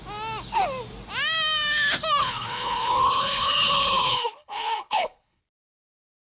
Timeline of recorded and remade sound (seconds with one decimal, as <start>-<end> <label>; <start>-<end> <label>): 0.0-2.2 recorded; 2.2-5.4 remade; 5.4-6.3 recorded